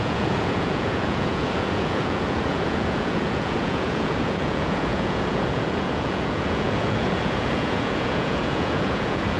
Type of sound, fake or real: fake